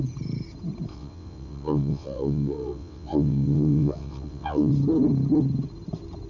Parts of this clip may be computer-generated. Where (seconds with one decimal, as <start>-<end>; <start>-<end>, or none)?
0.9-4.7